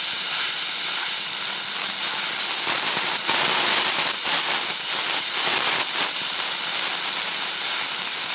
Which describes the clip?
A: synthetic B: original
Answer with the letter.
B